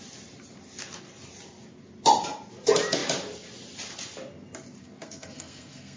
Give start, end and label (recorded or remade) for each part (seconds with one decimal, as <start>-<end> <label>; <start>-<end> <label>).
0.0-4.8 recorded; 4.8-6.0 remade